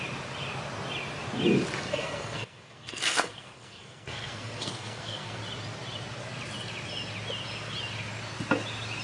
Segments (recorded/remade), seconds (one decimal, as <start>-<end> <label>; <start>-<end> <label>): 0.0-1.9 recorded; 1.9-5.4 remade; 5.4-9.0 recorded